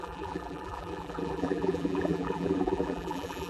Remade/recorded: remade